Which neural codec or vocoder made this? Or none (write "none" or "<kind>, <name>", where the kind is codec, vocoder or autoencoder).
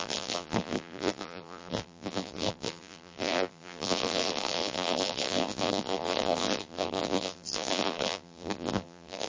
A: vocoder, BigVGAN v2